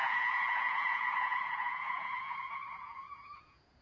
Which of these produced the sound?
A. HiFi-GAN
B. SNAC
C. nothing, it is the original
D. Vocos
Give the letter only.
D